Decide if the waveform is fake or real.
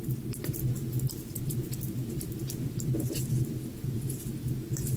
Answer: real